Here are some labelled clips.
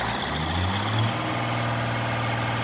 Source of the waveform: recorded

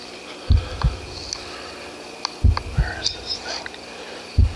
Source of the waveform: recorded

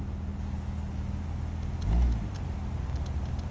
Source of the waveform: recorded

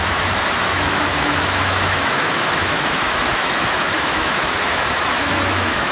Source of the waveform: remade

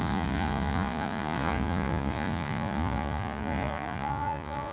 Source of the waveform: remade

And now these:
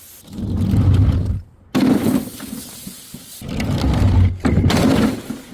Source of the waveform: recorded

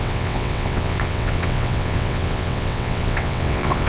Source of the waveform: remade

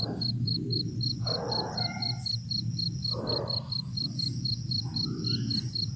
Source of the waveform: recorded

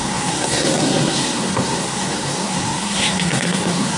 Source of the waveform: remade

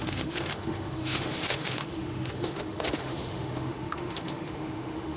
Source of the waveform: remade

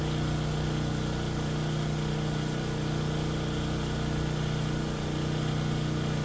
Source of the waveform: recorded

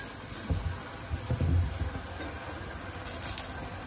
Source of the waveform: recorded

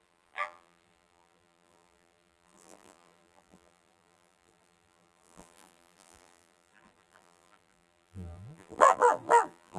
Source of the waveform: remade